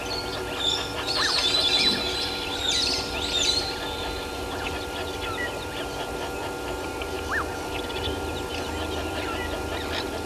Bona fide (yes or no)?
no